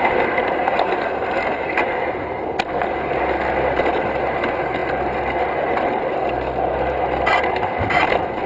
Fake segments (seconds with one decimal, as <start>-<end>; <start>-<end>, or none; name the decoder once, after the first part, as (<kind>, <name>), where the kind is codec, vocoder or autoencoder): none